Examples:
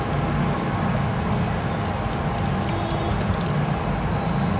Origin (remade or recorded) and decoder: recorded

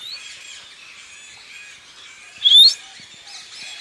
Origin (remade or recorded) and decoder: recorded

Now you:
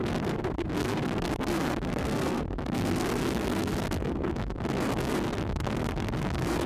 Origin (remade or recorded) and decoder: remade, codec, SNAC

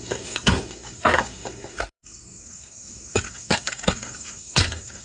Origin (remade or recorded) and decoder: remade, codec, SNAC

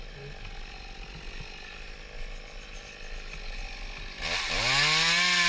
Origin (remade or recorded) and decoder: recorded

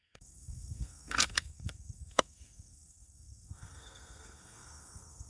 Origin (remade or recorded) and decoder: remade, codec, SNAC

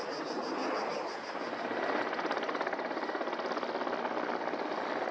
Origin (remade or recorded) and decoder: recorded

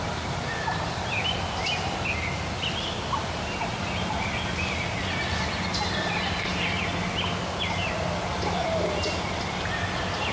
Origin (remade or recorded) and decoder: recorded